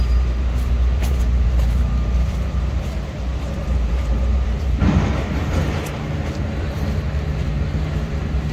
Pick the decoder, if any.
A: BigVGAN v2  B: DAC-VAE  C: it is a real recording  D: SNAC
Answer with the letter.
A